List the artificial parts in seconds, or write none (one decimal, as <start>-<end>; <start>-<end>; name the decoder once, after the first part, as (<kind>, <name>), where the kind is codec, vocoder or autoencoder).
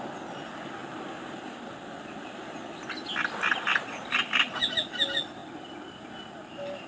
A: none